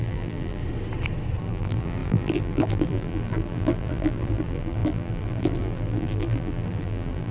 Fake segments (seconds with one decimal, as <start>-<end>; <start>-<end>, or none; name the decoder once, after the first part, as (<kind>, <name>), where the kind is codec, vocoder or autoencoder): 0.0-0.6 (vocoder, BigVGAN v2); 1.4-7.3